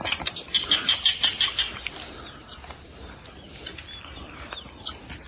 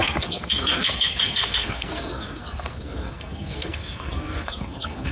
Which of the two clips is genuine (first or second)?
first